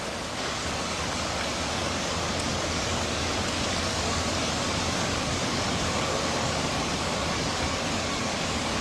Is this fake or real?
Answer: fake